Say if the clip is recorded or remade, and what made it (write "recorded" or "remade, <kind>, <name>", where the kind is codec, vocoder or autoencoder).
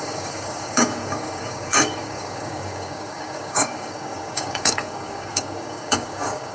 remade, codec, DAC